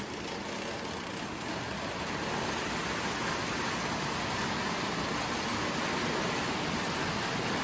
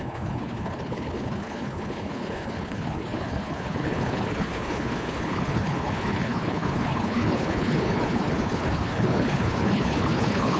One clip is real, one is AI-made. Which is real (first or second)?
first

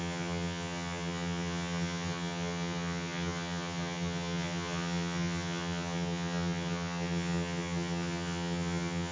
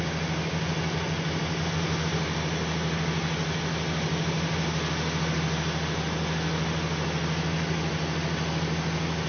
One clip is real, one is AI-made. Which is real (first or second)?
second